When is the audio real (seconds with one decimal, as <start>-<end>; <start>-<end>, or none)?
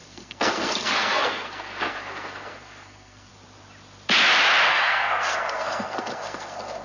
3.3-4.7